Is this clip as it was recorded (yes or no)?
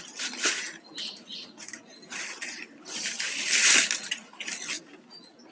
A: yes